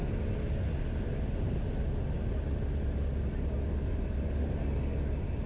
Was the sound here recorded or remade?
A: recorded